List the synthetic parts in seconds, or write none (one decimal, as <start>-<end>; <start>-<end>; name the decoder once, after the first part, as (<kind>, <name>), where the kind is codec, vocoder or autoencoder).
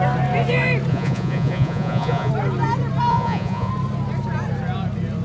0.9-2.3 (vocoder, Vocos); 3.1-3.7